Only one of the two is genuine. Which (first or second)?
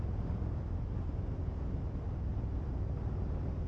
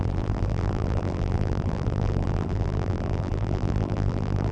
first